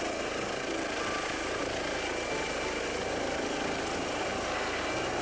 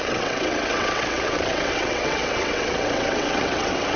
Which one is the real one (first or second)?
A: first